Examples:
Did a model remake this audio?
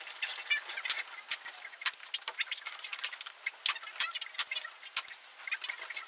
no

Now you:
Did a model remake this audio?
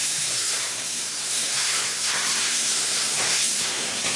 yes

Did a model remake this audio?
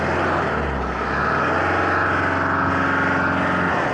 no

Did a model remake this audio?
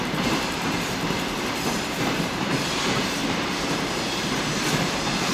yes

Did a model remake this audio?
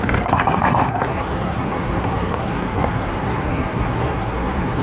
yes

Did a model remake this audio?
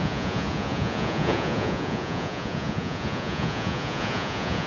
yes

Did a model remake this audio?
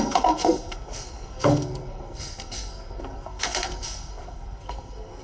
yes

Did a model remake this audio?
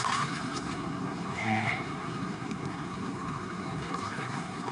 yes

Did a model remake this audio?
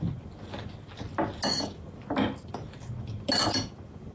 no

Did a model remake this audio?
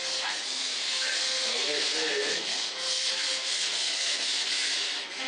yes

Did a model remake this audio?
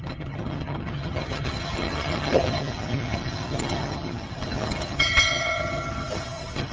yes